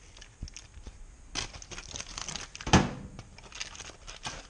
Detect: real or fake real